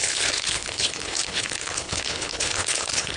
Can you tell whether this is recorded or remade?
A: remade